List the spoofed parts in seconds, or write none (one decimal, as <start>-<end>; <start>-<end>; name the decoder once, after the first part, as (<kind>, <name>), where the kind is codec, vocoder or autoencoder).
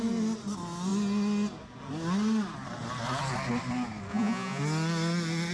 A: 4.1-4.6 (vocoder, Vocos)